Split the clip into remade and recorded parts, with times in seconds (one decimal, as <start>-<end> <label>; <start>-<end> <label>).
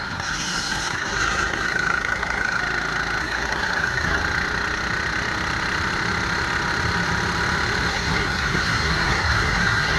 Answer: 0.0-2.6 remade; 2.6-3.2 recorded; 3.2-4.2 remade; 4.2-7.9 recorded; 7.9-10.0 remade